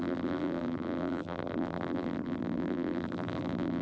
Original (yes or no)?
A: no